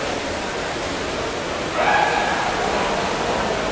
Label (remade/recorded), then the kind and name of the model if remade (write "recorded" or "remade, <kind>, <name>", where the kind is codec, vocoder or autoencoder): recorded